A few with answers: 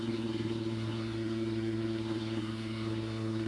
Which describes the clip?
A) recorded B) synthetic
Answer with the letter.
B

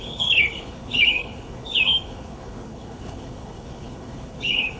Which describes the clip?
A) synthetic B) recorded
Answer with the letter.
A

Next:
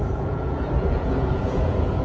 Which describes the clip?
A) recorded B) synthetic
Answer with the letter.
B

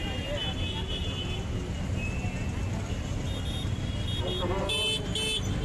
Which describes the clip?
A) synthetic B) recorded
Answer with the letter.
B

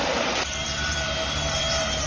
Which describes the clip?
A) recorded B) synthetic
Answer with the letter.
A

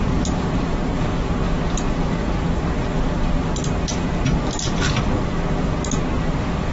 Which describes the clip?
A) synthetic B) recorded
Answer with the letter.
B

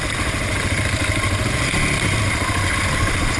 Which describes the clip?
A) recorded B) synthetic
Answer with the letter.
A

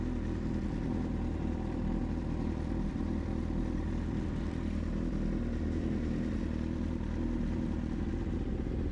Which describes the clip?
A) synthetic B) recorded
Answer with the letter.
A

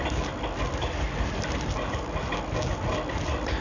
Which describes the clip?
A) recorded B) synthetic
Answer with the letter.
A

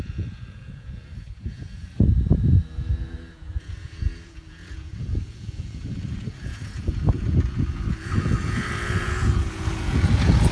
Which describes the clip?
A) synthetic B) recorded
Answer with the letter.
A